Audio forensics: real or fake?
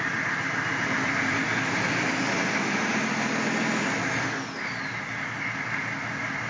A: real